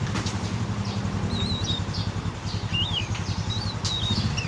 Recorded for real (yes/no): yes